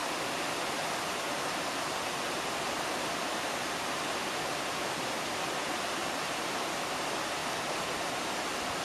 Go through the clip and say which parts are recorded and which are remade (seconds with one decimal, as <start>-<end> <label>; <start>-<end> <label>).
0.0-6.0 recorded; 6.0-6.8 remade; 6.8-7.4 recorded; 7.4-8.3 remade; 8.3-8.8 recorded